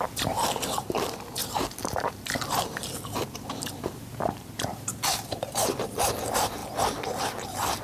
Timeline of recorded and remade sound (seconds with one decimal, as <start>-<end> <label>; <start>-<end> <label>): 0.0-1.4 recorded; 1.4-6.1 remade; 6.1-7.8 recorded

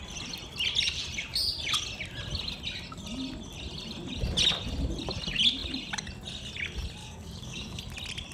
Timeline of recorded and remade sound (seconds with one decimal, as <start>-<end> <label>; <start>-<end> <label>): 0.0-7.0 recorded; 7.0-7.8 remade; 7.8-8.3 recorded